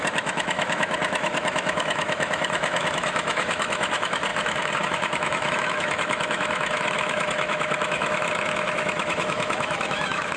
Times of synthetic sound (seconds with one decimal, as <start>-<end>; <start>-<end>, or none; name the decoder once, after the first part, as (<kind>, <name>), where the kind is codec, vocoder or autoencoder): 0.0-10.4 (autoencoder, DAC-VAE)